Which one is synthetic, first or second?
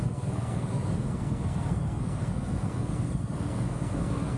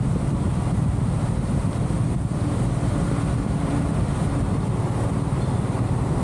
first